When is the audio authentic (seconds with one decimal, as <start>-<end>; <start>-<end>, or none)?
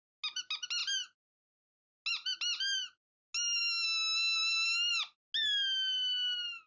0.0-6.7